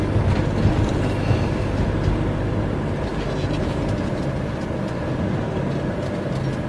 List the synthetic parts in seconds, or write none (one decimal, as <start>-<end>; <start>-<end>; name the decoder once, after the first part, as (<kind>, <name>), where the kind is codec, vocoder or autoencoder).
3.1-4.1 (vocoder, BigVGAN v2)